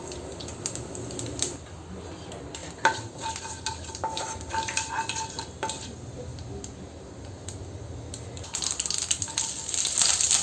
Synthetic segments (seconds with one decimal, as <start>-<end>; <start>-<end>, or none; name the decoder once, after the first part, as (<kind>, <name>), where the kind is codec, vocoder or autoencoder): none